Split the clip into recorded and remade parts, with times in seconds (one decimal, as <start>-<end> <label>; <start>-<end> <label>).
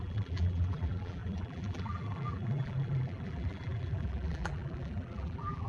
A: 0.0-5.7 remade